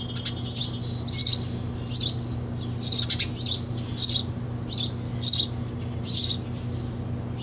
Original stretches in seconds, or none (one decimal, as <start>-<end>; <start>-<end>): 0.0-7.4

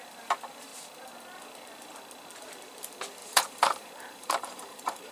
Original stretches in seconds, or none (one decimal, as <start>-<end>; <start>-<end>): 0.0-3.2